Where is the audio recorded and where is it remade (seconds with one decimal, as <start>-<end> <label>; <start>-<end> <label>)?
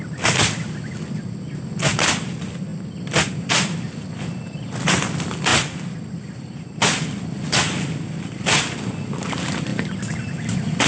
0.0-10.9 recorded